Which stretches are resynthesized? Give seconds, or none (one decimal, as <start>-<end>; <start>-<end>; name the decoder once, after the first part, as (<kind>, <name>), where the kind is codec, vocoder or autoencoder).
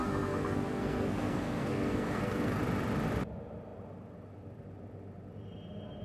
0.0-2.6 (codec, SNAC)